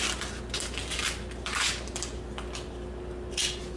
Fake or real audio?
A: real